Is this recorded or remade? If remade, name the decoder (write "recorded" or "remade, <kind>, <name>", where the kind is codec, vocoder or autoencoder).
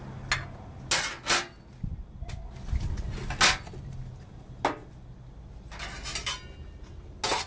recorded